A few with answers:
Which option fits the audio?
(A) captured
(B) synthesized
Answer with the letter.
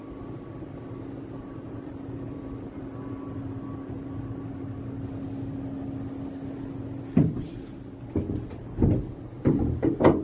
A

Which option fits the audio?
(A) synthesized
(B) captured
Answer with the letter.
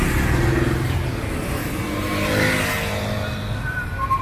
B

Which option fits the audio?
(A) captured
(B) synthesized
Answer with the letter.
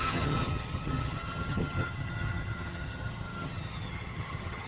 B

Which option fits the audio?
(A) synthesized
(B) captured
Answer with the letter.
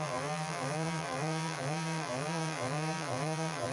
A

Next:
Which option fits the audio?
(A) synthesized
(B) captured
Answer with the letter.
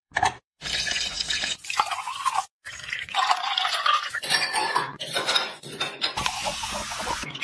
A